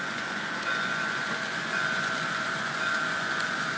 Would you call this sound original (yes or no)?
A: no